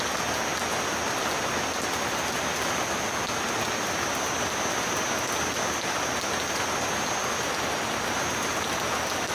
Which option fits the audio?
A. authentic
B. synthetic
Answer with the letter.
A